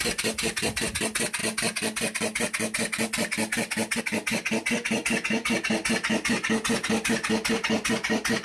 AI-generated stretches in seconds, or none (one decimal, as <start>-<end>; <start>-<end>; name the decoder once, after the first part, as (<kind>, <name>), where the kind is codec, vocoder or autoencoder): none